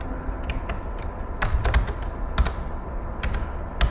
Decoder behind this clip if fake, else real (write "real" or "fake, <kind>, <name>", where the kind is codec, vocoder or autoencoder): real